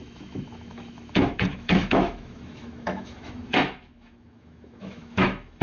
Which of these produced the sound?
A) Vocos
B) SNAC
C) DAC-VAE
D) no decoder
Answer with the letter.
C